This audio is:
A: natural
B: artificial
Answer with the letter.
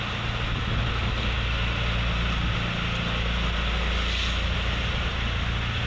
A